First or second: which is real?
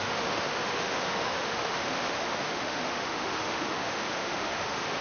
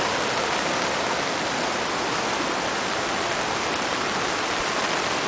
second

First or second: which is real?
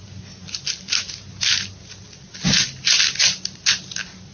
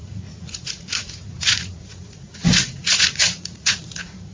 first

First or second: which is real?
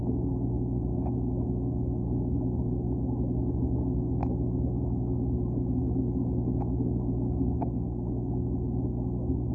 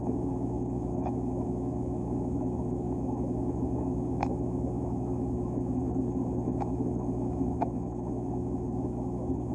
first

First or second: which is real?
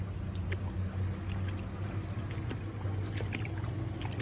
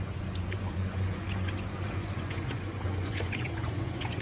first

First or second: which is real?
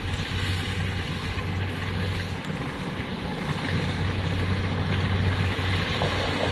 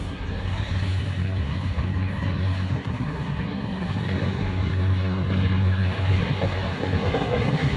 first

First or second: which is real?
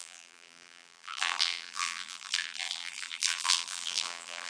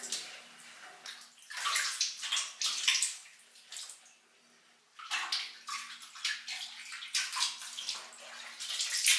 second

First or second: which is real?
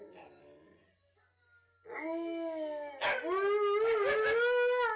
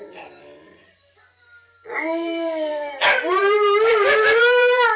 first